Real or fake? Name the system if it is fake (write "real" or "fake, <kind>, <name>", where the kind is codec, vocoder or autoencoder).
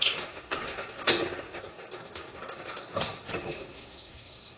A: fake, codec, SNAC